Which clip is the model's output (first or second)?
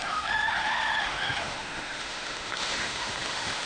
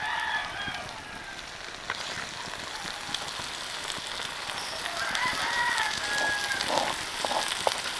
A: first